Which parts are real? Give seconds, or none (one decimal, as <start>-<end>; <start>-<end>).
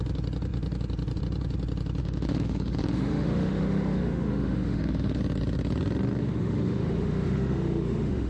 0.0-2.0; 5.2-6.2